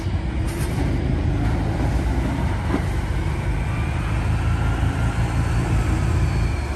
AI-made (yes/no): no